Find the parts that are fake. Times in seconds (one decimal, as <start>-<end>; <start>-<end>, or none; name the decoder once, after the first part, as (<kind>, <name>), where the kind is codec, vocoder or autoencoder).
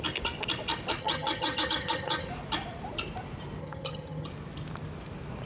1.0-2.3 (vocoder, HiFi-GAN); 3.6-4.3